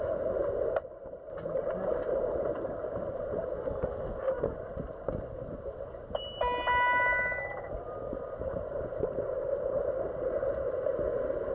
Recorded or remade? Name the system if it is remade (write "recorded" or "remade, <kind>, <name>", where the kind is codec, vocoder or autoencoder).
recorded